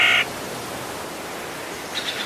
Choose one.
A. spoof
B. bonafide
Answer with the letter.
B